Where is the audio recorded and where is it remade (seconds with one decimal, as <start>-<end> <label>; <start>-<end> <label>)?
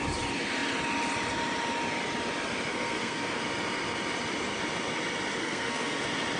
0.0-2.7 recorded; 2.7-3.4 remade; 3.4-5.4 recorded; 5.4-6.0 remade; 6.0-6.4 recorded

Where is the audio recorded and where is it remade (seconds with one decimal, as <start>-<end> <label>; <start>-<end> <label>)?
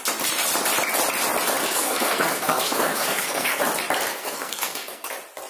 0.0-1.6 recorded; 1.6-3.6 remade; 3.6-4.1 recorded; 4.1-5.1 remade; 5.1-5.5 recorded